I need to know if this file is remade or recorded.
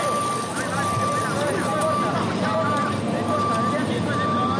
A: recorded